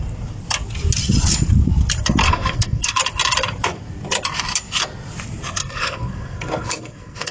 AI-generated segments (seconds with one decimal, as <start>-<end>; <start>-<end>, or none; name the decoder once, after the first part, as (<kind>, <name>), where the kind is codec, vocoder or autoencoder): 2.2-3.0 (codec, SNAC); 5.6-7.3